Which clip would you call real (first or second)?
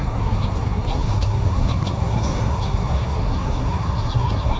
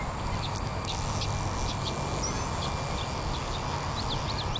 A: second